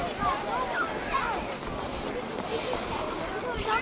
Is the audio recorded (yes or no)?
yes